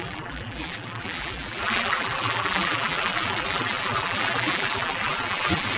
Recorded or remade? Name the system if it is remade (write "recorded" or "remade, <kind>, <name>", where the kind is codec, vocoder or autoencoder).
remade, vocoder, BigVGAN v2